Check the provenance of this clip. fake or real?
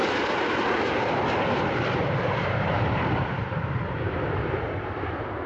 fake